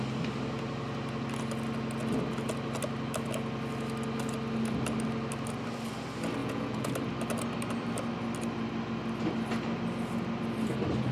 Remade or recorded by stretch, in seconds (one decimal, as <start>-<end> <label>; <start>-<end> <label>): 0.0-6.4 recorded; 6.4-6.9 remade; 6.9-11.1 recorded